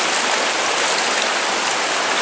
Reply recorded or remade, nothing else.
recorded